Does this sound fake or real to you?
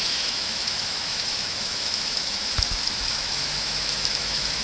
fake